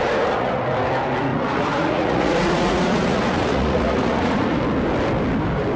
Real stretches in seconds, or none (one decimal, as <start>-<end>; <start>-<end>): 0.6-1.3; 4.6-5.8

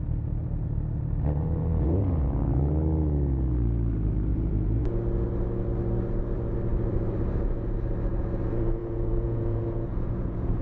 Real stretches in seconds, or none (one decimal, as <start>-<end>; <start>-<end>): 0.0-1.7; 2.6-4.3; 4.8-8.8